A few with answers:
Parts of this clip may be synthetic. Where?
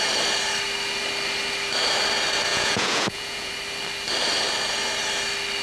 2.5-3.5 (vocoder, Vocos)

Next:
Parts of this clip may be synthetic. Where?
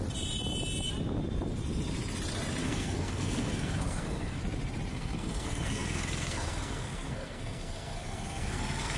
2.6-4.4 (codec, SNAC); 4.9-9.0